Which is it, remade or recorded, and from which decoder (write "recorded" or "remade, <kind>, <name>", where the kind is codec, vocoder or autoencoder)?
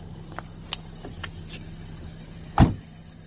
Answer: recorded